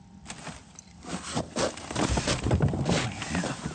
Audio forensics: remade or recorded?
recorded